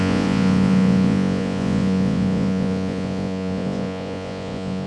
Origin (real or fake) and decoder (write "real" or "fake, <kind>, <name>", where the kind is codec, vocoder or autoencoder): fake, vocoder, Vocos